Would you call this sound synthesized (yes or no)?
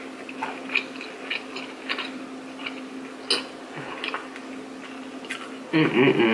no